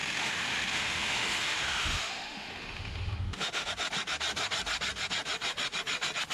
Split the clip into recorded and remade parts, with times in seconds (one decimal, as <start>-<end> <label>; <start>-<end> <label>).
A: 0.0-3.7 remade; 3.7-6.3 recorded